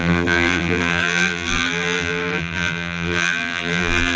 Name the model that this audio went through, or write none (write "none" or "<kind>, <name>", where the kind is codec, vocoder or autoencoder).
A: vocoder, BigVGAN v2